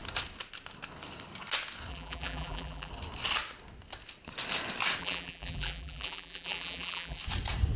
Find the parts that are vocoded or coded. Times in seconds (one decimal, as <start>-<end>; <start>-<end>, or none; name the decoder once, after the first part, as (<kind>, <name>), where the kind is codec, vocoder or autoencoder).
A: 1.9-2.9 (vocoder, BigVGAN v2); 5.0-7.2